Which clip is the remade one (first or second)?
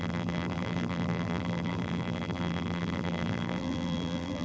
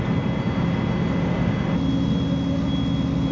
first